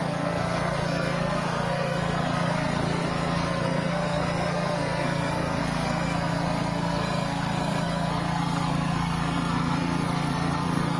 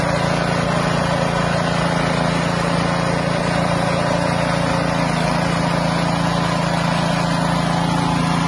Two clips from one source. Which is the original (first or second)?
second